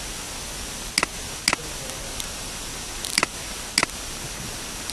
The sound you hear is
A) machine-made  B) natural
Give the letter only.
B